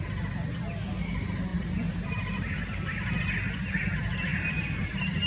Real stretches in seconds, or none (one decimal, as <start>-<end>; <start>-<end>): 0.0-1.5; 3.3-4.3; 4.8-5.3